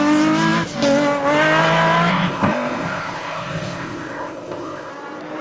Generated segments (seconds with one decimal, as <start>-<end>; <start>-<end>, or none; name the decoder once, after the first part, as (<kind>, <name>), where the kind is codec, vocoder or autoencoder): 2.1-4.9 (codec, ZipCodec)